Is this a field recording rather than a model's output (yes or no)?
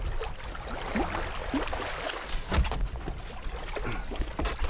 yes